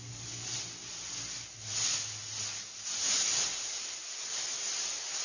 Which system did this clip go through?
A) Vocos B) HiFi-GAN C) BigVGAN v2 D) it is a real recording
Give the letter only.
D